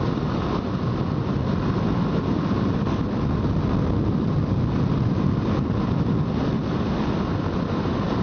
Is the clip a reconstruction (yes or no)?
no